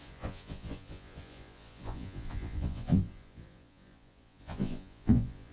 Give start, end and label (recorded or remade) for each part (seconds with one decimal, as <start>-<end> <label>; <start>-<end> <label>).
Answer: 0.0-5.5 remade